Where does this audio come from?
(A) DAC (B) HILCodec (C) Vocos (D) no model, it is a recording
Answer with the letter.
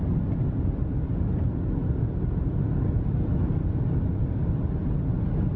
D